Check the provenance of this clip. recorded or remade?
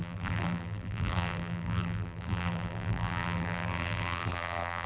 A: remade